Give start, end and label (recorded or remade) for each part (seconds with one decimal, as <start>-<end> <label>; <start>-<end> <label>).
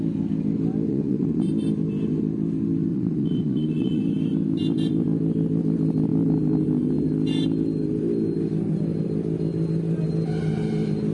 0.0-0.9 recorded; 0.9-1.5 remade; 1.5-2.9 recorded; 2.9-4.0 remade; 4.0-11.1 recorded